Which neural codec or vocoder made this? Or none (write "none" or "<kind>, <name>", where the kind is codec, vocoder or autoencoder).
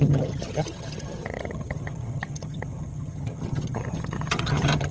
vocoder, HiFi-GAN